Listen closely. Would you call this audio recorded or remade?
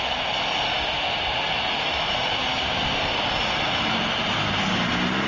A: recorded